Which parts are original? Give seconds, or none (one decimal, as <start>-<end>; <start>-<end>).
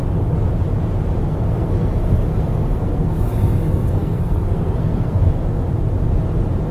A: 0.0-1.2; 5.2-6.7